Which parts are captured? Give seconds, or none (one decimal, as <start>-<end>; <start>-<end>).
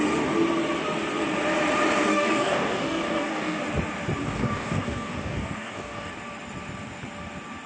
0.0-2.1; 3.6-4.2; 6.1-7.7